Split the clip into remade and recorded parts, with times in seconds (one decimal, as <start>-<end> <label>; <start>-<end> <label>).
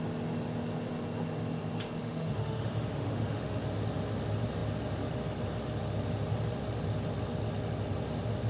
0.0-2.0 recorded; 2.0-3.6 remade; 3.6-8.5 recorded